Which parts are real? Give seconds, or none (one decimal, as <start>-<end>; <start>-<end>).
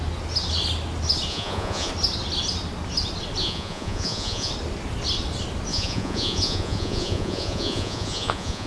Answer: 0.0-1.3; 1.9-3.4; 4.5-5.7